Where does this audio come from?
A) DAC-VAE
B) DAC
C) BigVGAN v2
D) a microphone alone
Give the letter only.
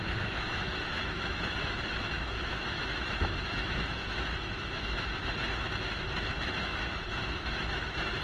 A